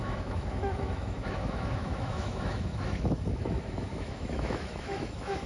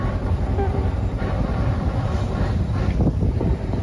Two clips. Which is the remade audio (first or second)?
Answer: first